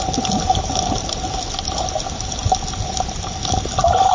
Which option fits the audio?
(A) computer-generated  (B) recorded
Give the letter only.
B